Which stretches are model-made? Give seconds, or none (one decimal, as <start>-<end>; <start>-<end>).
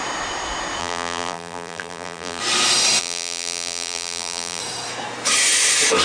0.8-2.4; 3.0-4.6